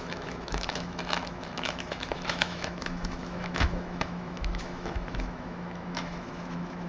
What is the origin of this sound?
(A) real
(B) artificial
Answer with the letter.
B